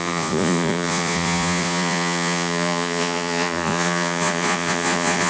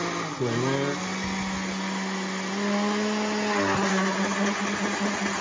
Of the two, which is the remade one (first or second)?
first